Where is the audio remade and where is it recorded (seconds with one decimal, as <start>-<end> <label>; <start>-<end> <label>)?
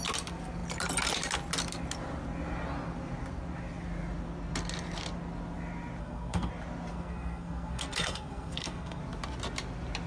0.0-6.0 recorded; 6.0-6.5 remade; 6.5-6.9 recorded; 6.9-9.0 remade; 9.0-10.1 recorded